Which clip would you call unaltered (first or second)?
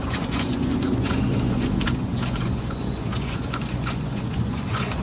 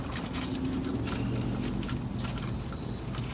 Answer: second